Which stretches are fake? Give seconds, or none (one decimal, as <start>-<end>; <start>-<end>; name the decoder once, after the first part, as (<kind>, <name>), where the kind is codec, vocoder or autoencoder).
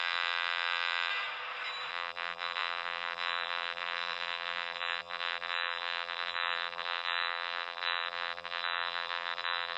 0.0-1.1 (vocoder, BigVGAN v2); 1.9-9.8